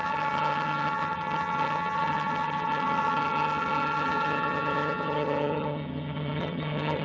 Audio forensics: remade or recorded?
remade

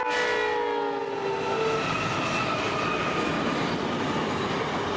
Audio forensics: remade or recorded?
recorded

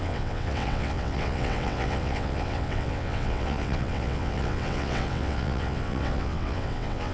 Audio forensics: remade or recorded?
remade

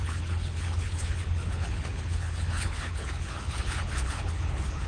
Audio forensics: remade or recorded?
remade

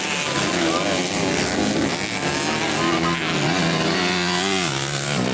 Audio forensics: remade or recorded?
recorded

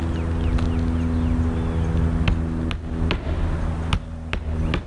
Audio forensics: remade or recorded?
recorded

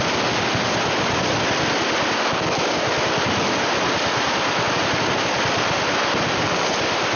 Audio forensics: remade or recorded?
recorded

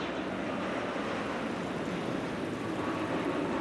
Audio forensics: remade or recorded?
recorded